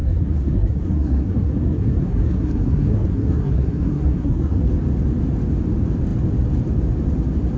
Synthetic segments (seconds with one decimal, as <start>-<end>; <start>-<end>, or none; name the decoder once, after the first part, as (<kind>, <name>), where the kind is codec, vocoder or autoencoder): 0.0-4.6 (codec, SNAC)